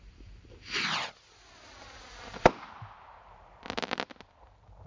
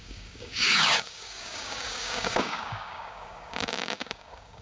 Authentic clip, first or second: first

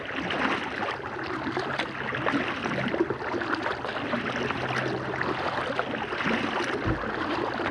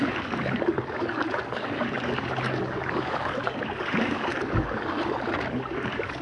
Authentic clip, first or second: first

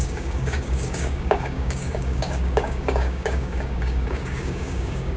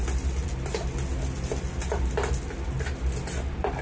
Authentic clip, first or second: second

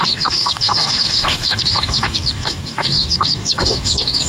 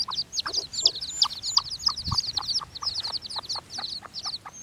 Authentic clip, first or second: second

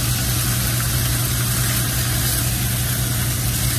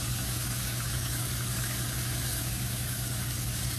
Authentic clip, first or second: first